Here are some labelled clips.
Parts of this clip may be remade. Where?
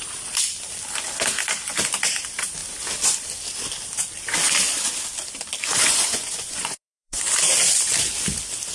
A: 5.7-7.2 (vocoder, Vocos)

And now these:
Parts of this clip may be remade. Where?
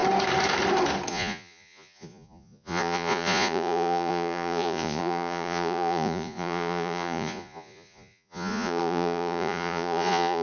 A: 1.1-10.4 (vocoder, Vocos)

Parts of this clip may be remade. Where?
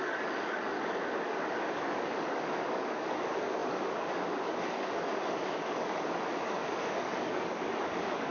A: 0.0-8.3 (codec, DAC)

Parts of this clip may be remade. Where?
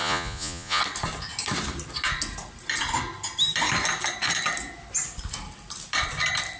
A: 0.0-0.8 (vocoder, Vocos)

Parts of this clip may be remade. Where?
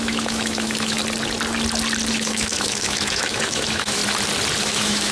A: 0.0-1.0 (autoencoder, DAC-VAE); 2.1-4.0; 4.6-5.1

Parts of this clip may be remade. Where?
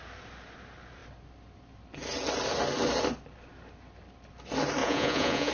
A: 4.8-5.5 (vocoder, Vocos)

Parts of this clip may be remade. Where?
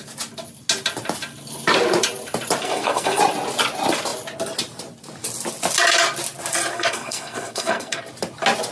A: 2.6-3.2 (codec, SNAC); 6.7-8.0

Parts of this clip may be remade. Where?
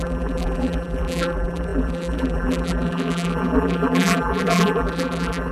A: 0.0-5.5 (vocoder, BigVGAN v2)